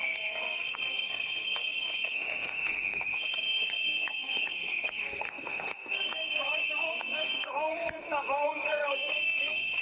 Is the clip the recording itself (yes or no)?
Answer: no